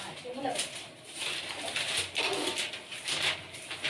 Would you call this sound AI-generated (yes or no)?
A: no